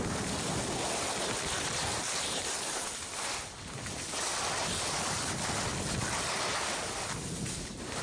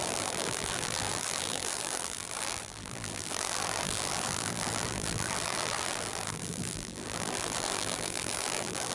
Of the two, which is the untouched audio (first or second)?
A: first